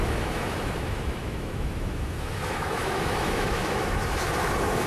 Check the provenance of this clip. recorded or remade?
remade